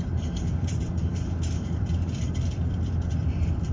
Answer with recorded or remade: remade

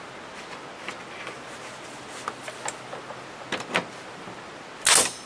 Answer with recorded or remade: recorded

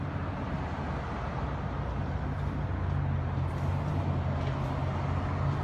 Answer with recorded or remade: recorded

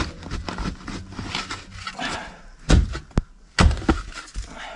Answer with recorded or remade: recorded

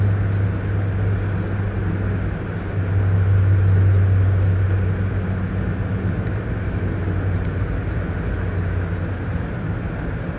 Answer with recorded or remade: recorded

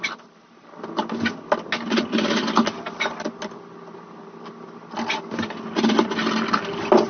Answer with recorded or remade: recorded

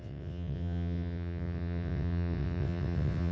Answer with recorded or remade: remade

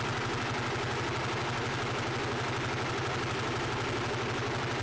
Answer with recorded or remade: recorded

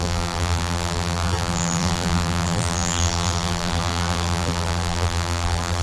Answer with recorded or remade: remade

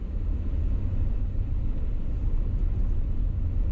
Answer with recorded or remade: recorded